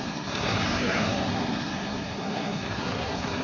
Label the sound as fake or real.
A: fake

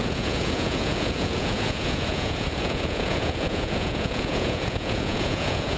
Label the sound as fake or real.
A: fake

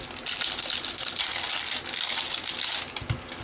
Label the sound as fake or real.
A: real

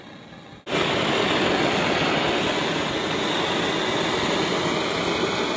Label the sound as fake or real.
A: real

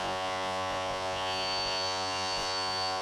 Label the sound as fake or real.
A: fake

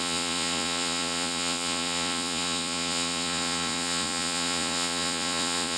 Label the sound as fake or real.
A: fake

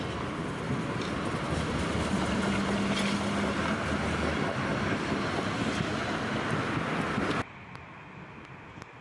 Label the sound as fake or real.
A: real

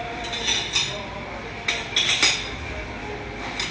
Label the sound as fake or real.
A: real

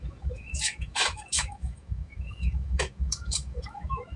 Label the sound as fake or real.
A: fake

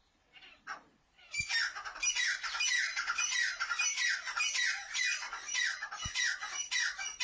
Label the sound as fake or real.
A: real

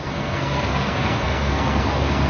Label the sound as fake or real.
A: fake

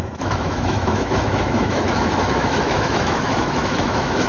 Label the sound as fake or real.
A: fake